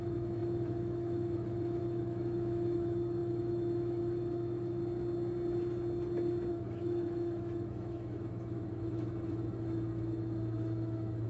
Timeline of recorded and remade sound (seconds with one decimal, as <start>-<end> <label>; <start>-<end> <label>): 0.0-4.8 remade; 4.8-6.5 recorded; 6.5-11.3 remade

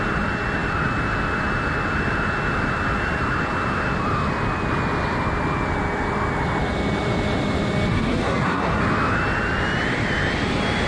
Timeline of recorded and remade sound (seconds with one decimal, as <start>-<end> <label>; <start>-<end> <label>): 0.0-7.9 recorded; 7.9-8.8 remade; 8.8-10.9 recorded

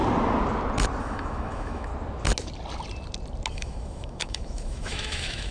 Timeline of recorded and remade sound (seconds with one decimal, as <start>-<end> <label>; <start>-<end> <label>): 0.0-1.0 recorded; 1.0-1.9 remade; 1.9-3.5 recorded; 3.5-5.5 remade